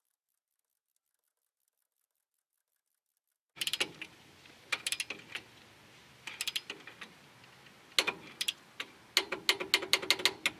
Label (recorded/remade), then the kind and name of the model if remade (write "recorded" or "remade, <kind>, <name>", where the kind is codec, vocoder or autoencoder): recorded